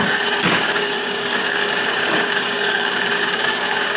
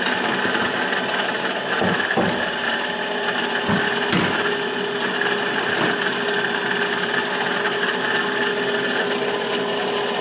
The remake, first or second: first